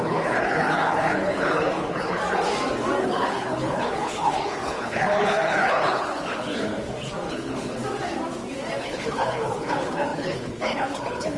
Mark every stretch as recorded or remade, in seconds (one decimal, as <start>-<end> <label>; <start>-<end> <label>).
0.0-2.2 remade; 2.2-3.0 recorded; 3.0-6.7 remade; 6.7-7.3 recorded; 7.3-7.8 remade; 7.8-8.8 recorded; 8.8-11.4 remade